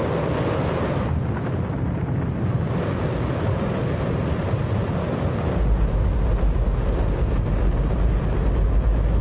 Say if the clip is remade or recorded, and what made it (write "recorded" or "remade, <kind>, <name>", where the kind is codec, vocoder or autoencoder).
recorded